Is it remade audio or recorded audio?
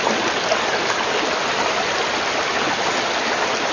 recorded